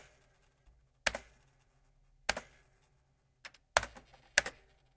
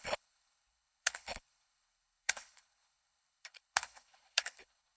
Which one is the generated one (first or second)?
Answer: second